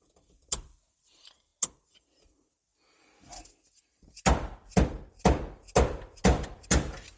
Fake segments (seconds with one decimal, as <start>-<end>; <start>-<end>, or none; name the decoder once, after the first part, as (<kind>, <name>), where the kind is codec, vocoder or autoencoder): none